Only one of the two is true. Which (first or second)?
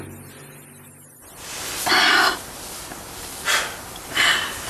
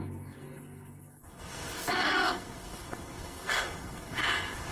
first